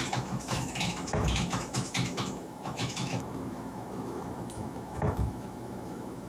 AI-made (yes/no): yes